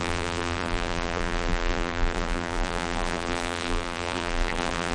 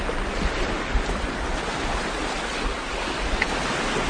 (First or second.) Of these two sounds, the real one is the second